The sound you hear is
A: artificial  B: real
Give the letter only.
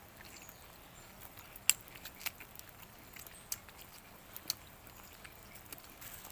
B